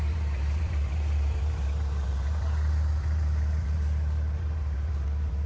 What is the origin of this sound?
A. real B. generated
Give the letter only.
B